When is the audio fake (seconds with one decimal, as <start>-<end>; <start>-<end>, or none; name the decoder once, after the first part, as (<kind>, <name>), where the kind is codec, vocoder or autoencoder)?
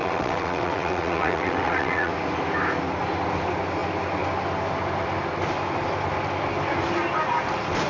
0.0-2.1 (vocoder, WaveNeXt)